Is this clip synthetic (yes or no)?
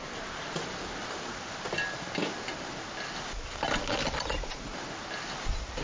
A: no